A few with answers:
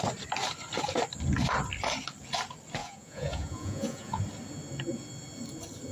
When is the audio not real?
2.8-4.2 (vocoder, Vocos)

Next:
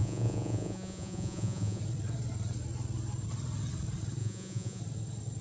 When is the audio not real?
0.0-1.8 (vocoder, Vocos); 4.2-4.8

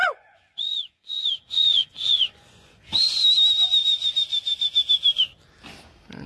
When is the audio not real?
0.0-3.2 (vocoder, Vocos)

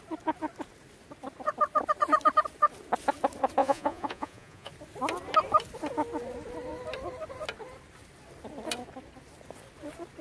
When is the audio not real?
3.6-4.7 (vocoder, Vocos)

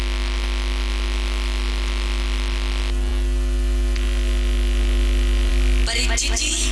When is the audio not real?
none